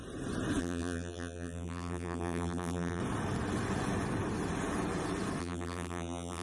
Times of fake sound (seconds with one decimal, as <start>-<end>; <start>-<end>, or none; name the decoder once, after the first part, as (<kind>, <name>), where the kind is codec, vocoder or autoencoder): 0.6-3.0 (vocoder, BigVGAN v2); 5.4-6.4